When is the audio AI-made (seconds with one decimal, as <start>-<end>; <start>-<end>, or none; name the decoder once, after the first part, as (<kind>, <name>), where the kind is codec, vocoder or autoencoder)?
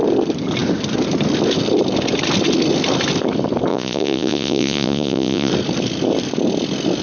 3.7-5.5 (vocoder, Vocos)